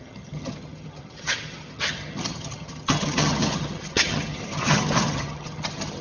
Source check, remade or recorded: remade